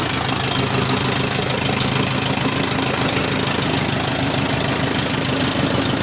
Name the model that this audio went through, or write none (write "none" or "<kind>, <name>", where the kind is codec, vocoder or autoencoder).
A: none